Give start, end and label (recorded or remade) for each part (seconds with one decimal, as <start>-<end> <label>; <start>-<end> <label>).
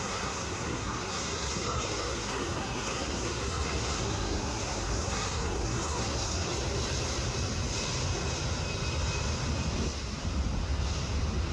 0.0-6.5 remade; 6.5-11.5 recorded